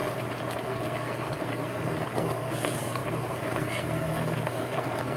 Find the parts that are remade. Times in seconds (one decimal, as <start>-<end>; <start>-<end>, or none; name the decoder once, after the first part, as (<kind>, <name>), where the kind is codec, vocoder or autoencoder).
0.6-5.2 (codec, SNAC)